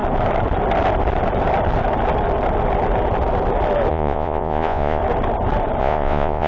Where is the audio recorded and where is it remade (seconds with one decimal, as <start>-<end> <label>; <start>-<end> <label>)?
0.0-3.9 recorded; 3.9-5.0 remade; 5.0-5.8 recorded; 5.8-6.5 remade